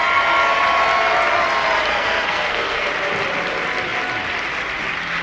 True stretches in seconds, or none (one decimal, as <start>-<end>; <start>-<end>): 0.0-1.9; 2.9-5.2